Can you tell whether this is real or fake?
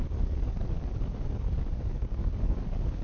fake